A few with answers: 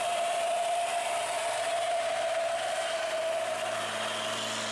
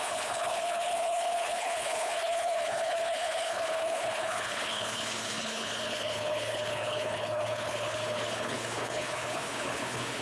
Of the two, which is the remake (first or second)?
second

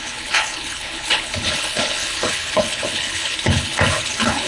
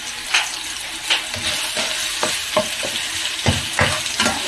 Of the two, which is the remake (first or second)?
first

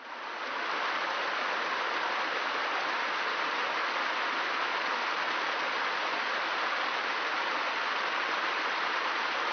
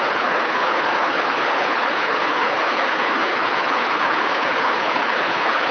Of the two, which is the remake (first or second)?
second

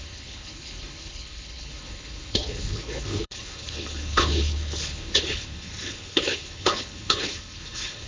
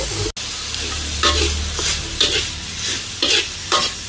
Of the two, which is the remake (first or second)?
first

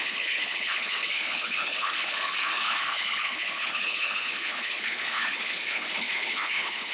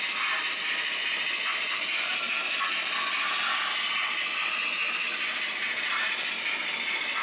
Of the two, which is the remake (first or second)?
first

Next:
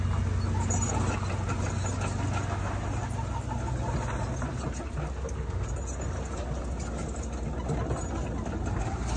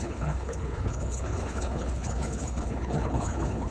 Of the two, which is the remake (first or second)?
second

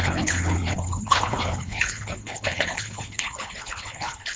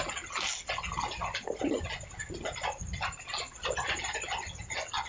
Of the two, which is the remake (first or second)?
first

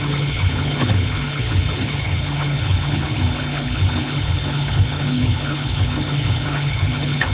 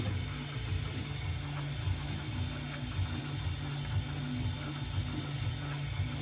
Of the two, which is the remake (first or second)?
first